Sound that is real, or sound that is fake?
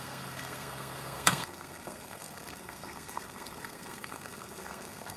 fake